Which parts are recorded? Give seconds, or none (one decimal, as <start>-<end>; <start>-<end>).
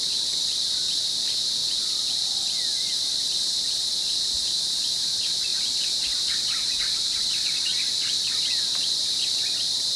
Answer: 7.7-8.4